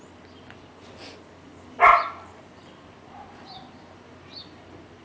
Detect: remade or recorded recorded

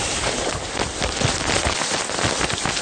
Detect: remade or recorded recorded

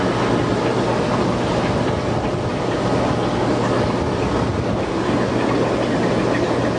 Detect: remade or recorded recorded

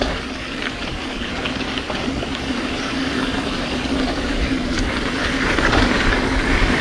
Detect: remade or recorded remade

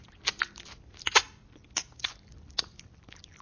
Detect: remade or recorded recorded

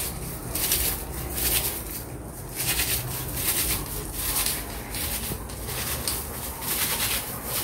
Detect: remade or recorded recorded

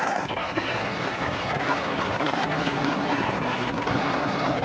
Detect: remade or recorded remade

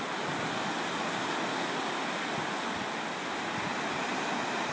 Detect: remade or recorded recorded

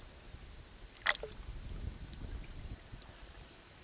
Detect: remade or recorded recorded